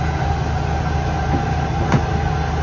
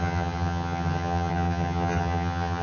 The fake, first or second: second